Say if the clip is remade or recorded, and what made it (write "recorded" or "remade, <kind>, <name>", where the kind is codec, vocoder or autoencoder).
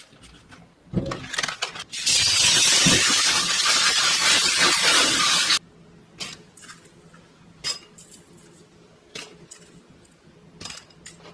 recorded